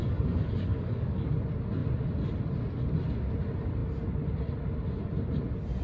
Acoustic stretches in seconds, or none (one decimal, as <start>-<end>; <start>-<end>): 1.3-5.8